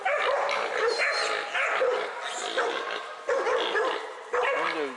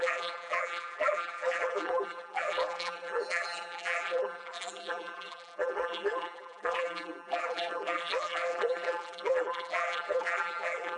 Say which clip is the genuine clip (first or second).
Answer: first